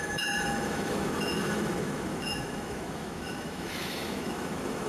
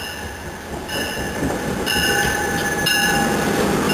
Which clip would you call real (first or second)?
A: second